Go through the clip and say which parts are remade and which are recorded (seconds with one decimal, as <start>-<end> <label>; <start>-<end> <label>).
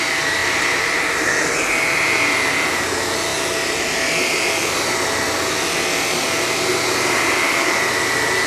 0.0-0.4 recorded; 0.4-1.3 remade; 1.3-8.5 recorded